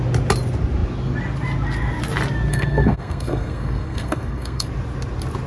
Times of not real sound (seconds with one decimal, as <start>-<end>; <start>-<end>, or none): 2.5-4.7